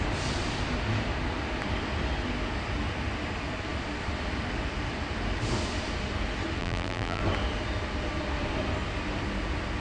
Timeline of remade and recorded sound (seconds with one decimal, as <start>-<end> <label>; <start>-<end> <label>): 0.0-6.6 recorded; 6.6-7.2 remade; 7.2-9.8 recorded